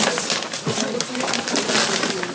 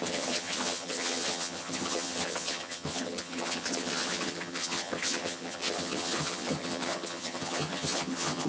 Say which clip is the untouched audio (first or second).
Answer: first